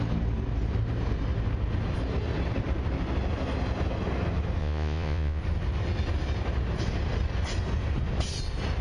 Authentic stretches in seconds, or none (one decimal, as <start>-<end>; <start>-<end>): 0.0-4.6; 5.4-8.8